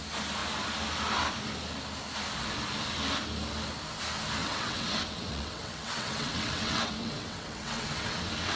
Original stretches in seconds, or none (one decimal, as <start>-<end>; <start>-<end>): 0.0-4.4